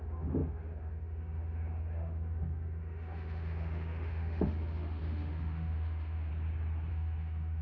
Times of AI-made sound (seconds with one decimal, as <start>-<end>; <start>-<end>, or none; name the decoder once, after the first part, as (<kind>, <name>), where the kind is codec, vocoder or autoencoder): 0.0-6.3 (autoencoder, DAC-VAE); 6.9-7.6